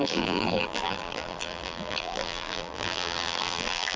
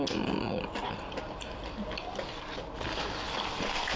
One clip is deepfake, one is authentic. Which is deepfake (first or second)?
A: first